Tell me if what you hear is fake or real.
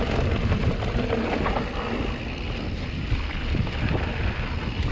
real